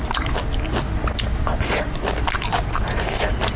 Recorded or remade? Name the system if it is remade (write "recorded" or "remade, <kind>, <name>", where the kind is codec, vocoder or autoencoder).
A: recorded